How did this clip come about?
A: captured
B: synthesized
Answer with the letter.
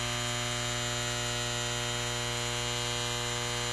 A